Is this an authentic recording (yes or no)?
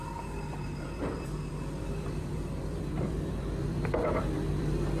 no